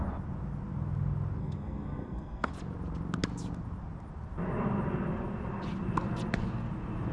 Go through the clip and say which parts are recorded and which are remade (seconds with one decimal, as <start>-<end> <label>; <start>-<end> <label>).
0.0-1.4 recorded; 1.4-2.5 remade; 2.5-7.1 recorded